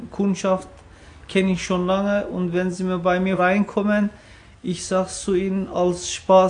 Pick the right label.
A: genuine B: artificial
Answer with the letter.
A